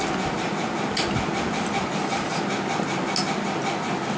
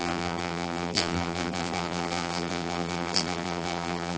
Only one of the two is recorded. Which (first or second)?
first